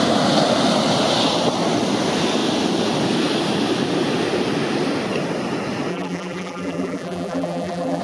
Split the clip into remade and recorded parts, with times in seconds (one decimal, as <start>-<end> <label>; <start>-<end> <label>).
0.0-5.9 recorded; 5.9-8.0 remade